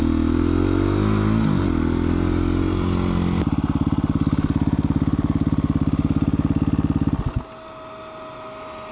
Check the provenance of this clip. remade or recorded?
recorded